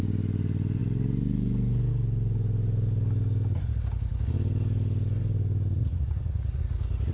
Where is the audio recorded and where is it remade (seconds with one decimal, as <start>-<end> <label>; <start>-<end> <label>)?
0.0-5.8 recorded; 5.8-6.6 remade; 6.6-7.1 recorded